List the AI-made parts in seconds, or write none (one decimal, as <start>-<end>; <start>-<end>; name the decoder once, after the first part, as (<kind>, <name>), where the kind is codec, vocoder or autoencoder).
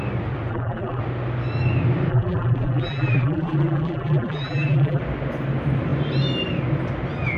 0.5-1.0 (vocoder, BigVGAN v2); 2.1-5.0